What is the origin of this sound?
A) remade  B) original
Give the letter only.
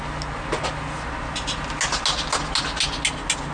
B